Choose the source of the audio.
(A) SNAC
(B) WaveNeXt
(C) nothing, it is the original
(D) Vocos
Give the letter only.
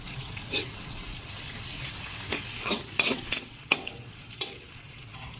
B